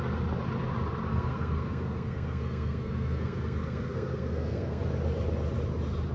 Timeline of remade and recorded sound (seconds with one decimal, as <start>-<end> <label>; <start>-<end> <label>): 0.0-1.1 recorded; 1.1-4.8 remade; 4.8-6.1 recorded